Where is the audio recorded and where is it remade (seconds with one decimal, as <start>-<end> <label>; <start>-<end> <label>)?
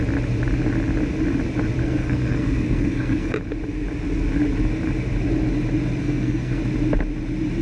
0.0-1.8 recorded; 1.8-3.3 remade; 3.3-6.0 recorded; 6.0-6.6 remade; 6.6-7.6 recorded